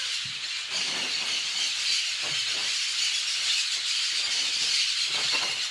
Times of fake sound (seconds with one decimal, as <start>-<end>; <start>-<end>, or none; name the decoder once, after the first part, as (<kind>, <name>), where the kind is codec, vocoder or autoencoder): none